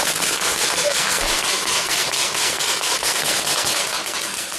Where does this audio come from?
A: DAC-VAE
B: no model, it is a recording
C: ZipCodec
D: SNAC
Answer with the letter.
D